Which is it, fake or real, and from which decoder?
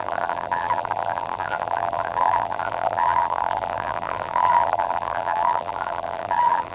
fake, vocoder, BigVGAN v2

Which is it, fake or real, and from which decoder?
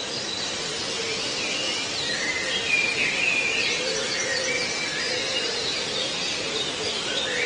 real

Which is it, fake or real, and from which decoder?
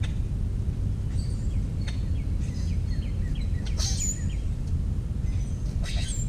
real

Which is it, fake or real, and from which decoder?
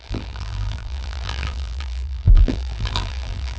fake, vocoder, BigVGAN v2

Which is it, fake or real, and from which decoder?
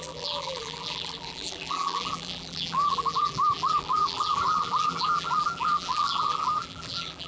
fake, vocoder, BigVGAN v2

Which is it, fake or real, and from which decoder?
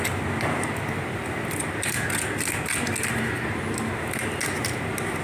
real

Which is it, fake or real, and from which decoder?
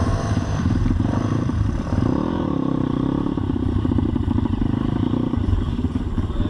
fake, vocoder, BigVGAN v2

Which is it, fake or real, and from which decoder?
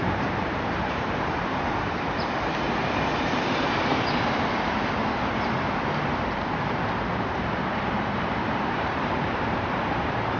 fake, vocoder, BigVGAN v2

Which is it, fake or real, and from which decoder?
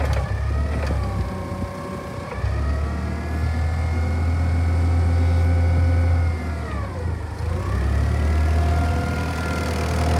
real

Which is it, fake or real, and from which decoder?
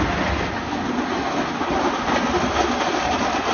real